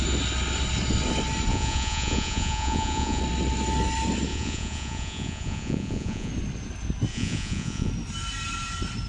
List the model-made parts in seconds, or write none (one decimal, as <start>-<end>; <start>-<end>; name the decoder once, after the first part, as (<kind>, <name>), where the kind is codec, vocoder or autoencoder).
1.5-3.2 (vocoder, Vocos); 4.3-6.3; 7.1-7.9